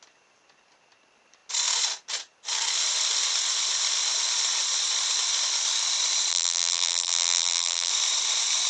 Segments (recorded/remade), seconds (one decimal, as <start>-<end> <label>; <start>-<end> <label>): 0.0-6.3 recorded; 6.3-7.9 remade; 7.9-8.7 recorded